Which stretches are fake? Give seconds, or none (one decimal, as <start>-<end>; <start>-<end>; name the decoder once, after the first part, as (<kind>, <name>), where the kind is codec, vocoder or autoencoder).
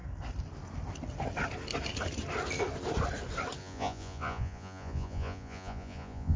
3.6-6.4 (vocoder, Vocos)